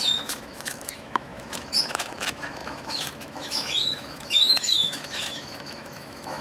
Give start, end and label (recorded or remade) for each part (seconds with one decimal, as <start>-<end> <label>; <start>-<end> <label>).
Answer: 0.0-6.4 remade